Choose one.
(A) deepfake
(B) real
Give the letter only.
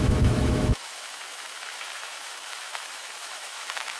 A